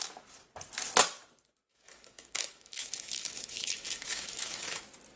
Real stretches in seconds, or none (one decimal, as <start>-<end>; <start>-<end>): 0.0-1.7; 4.8-5.2